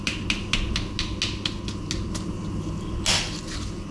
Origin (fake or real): real